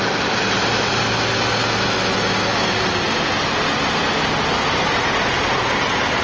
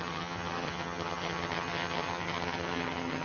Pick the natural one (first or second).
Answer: first